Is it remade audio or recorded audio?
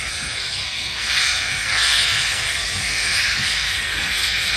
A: remade